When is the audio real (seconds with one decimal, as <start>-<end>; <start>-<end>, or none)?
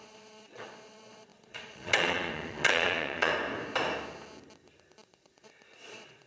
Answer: 3.3-5.1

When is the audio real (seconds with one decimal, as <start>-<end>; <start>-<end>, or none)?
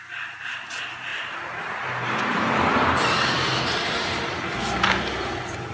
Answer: 0.0-1.1; 3.6-5.7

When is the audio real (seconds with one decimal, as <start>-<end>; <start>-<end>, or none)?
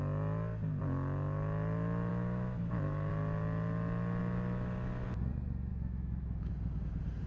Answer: 0.0-2.1; 3.1-5.7; 6.5-7.3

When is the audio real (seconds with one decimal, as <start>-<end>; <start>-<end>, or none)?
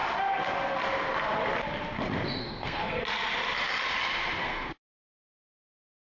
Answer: 0.0-2.4; 3.0-4.4; 5.1-6.0